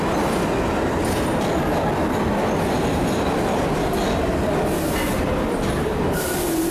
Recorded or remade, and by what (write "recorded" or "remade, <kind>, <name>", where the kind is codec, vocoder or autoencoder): recorded